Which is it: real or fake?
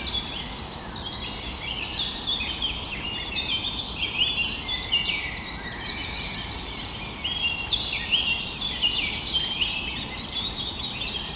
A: fake